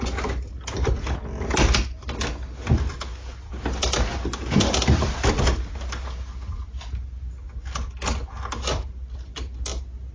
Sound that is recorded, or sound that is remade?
recorded